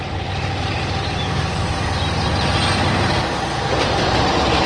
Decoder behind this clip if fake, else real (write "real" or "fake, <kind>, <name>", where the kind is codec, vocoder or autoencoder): real